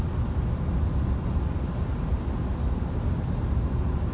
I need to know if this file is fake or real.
real